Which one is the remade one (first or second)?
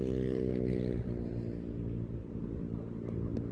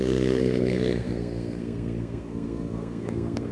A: second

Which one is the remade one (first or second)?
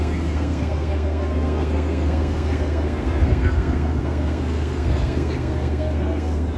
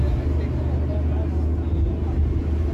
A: first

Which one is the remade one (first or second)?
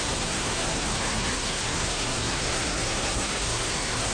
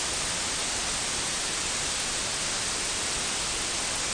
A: first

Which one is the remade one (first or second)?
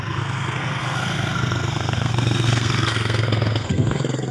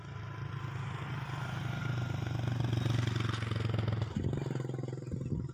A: first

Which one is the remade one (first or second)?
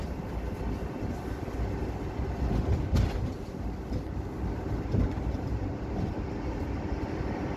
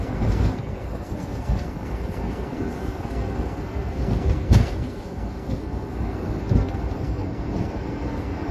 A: second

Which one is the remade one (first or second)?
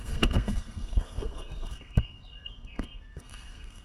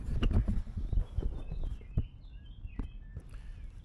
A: first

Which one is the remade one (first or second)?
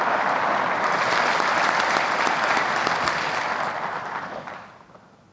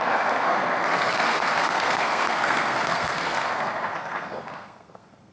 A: second